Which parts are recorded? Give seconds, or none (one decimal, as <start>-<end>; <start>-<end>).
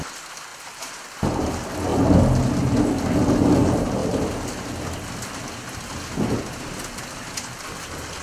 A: 0.0-0.5; 1.5-8.2